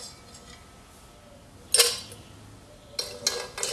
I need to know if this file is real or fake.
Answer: real